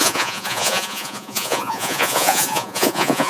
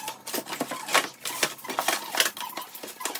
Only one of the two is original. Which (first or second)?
second